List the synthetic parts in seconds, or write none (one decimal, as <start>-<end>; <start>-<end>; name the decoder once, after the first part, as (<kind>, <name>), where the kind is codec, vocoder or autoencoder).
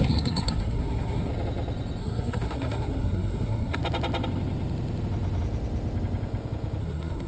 0.0-1.3 (codec, SNAC); 2.0-3.8; 6.8-7.3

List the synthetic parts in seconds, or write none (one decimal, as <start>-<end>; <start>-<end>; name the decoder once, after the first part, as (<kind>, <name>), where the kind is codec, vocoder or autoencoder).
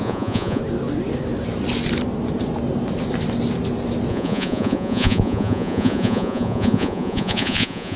0.0-0.6 (vocoder, Vocos); 4.1-8.0